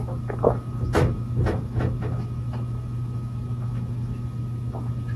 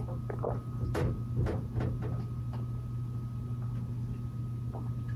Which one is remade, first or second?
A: first